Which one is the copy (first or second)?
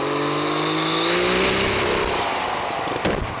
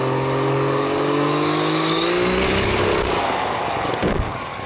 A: second